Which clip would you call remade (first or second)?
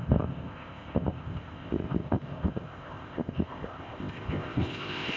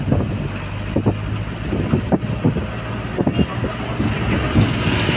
first